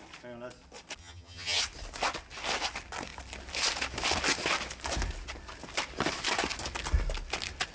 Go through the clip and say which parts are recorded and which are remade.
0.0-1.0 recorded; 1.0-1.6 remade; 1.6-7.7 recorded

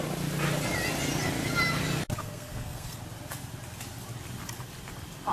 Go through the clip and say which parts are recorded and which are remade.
0.0-2.2 recorded; 2.2-3.0 remade; 3.0-5.3 recorded

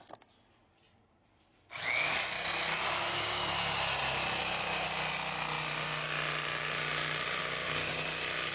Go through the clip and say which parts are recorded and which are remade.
0.0-8.5 recorded